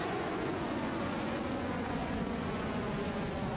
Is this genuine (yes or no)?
no